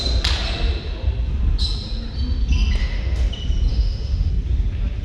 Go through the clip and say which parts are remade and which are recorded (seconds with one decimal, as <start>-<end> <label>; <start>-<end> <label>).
0.0-2.8 recorded; 2.8-3.3 remade; 3.3-3.7 recorded; 3.7-4.3 remade; 4.3-5.0 recorded